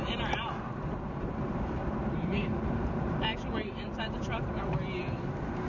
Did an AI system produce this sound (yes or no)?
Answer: yes